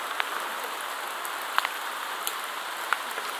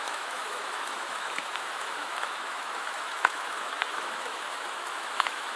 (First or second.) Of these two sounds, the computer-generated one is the second